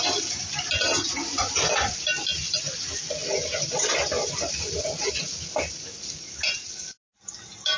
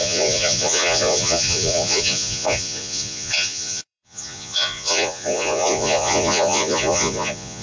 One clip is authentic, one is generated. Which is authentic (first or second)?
first